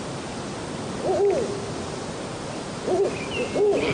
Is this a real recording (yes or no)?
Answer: yes